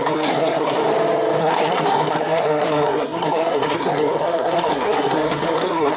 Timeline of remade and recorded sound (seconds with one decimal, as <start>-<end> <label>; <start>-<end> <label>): 0.0-0.8 remade; 0.8-1.4 recorded; 1.4-6.0 remade